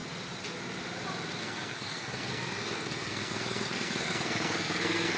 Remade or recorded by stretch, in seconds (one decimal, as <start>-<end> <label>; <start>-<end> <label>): 0.0-1.4 recorded; 1.4-5.2 remade